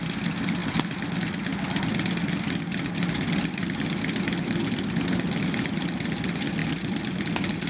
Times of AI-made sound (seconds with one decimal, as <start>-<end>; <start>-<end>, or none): none

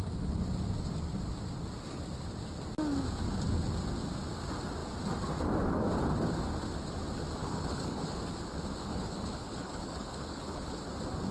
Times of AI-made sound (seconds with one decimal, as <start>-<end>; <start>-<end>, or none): 7.4-8.2; 8.8-10.8

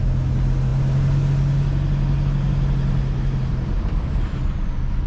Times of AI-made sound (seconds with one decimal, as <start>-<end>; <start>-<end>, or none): none

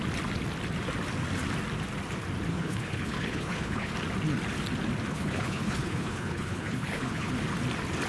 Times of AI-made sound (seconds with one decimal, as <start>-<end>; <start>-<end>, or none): 2.5-3.9; 5.1-7.3

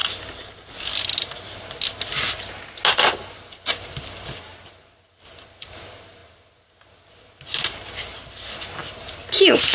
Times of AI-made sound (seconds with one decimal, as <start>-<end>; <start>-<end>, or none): none

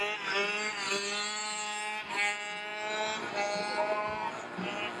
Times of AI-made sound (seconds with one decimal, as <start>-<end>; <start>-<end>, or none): none